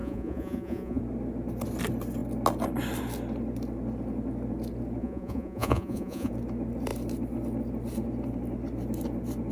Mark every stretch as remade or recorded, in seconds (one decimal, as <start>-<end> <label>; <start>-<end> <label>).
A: 0.0-1.0 remade; 1.0-5.0 recorded; 5.0-6.3 remade; 6.3-9.5 recorded